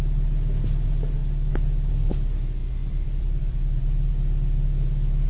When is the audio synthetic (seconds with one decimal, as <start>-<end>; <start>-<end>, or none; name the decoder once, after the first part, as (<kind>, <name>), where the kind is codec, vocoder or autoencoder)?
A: 2.6-4.1 (vocoder, BigVGAN v2)